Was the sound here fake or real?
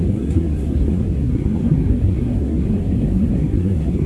fake